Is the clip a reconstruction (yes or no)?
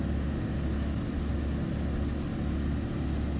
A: no